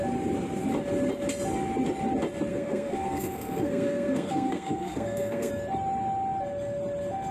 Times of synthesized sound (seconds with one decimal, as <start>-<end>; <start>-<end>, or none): 2.5-5.5